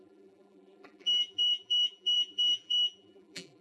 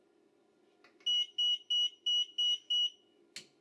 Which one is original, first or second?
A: second